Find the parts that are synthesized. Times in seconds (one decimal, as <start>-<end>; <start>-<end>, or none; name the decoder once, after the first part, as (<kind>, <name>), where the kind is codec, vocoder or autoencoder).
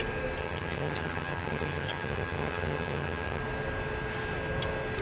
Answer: 0.4-3.4 (vocoder, HiFi-GAN)